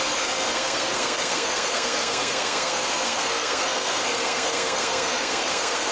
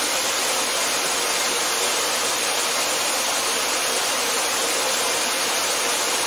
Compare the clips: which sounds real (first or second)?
second